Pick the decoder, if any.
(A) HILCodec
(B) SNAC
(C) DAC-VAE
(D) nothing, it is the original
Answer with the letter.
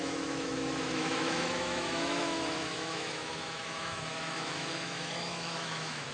C